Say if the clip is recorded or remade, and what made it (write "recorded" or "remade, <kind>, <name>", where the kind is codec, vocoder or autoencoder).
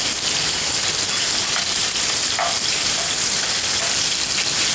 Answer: recorded